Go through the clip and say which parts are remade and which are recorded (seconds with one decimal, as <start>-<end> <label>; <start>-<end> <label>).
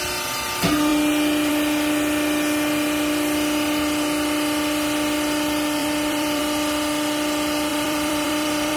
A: 0.0-5.8 recorded; 5.8-6.4 remade; 6.4-7.7 recorded; 7.7-8.8 remade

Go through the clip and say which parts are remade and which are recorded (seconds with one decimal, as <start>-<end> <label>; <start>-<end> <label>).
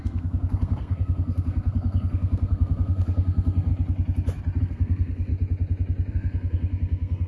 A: 0.0-3.7 remade; 3.7-4.6 recorded; 4.6-5.3 remade; 5.3-6.1 recorded; 6.1-7.3 remade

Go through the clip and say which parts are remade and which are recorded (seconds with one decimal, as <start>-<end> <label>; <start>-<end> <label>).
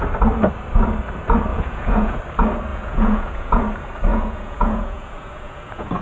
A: 0.0-1.5 recorded; 1.5-2.2 remade; 2.2-2.7 recorded; 2.7-3.6 remade; 3.6-4.1 recorded; 4.1-6.0 remade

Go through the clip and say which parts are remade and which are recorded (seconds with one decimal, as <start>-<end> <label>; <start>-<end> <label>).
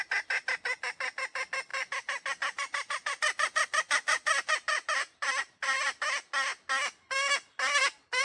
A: 0.0-1.7 recorded; 1.7-6.0 remade; 6.0-8.2 recorded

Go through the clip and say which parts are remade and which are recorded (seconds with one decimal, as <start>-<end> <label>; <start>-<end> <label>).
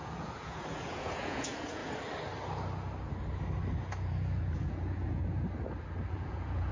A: 0.0-1.8 remade; 1.8-3.9 recorded; 3.9-5.2 remade; 5.2-6.1 recorded; 6.1-6.7 remade